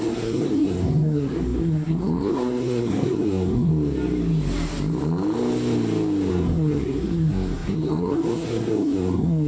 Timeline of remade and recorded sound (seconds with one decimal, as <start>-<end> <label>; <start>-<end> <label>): 0.0-3.7 remade; 3.7-6.3 recorded; 6.3-9.5 remade